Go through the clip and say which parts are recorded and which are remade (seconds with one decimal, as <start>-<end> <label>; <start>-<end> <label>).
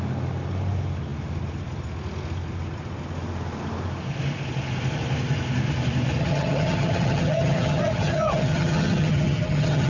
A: 0.0-6.2 recorded; 6.2-9.9 remade